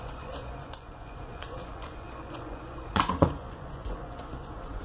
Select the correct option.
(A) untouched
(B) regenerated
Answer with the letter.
B